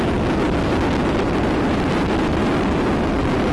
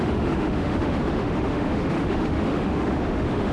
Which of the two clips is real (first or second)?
first